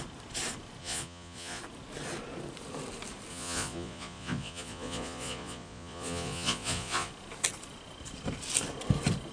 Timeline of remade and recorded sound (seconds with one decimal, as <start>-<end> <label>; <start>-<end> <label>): 0.0-0.8 recorded; 0.8-1.6 remade; 1.6-3.3 recorded; 3.3-7.1 remade; 7.1-9.3 recorded